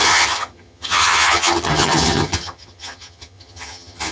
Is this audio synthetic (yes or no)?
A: yes